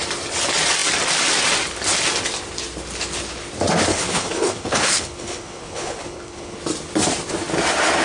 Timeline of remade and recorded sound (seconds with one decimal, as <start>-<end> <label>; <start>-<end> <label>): 0.0-3.9 recorded; 3.9-6.6 remade; 6.6-8.0 recorded